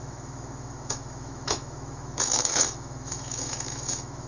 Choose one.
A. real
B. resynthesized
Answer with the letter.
B